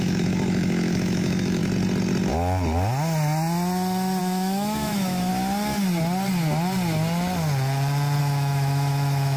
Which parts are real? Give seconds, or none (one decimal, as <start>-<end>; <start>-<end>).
1.6-4.2; 5.3-8.2